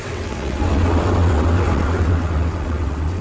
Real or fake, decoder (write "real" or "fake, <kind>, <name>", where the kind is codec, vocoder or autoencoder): fake, vocoder, WaveNeXt